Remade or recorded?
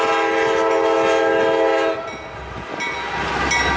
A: recorded